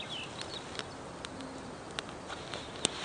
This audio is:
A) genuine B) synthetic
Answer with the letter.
A